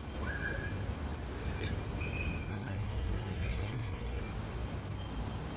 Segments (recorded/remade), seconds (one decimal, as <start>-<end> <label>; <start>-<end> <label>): 0.0-2.5 recorded; 2.5-4.2 remade; 4.2-5.6 recorded